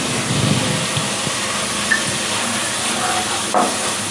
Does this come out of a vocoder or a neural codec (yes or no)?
no